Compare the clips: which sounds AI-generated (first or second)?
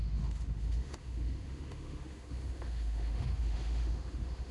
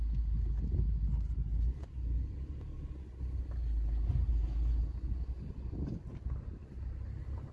first